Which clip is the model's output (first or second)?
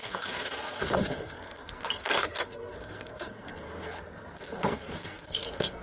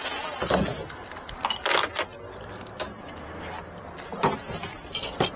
first